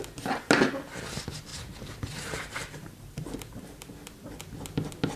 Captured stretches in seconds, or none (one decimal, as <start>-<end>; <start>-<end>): 0.0-1.5; 3.9-5.2